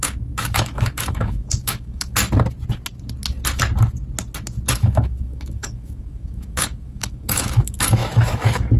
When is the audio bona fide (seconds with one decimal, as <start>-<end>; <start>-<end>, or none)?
2.2-4.7